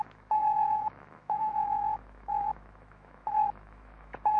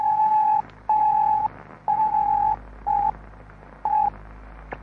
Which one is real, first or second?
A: second